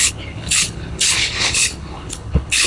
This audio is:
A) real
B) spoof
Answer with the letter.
B